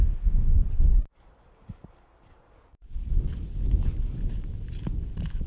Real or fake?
real